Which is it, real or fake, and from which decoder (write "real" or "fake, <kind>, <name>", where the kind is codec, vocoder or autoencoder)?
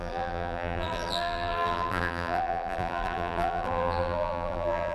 fake, vocoder, BigVGAN v2